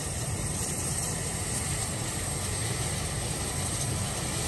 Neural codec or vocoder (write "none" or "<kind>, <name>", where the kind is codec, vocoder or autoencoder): none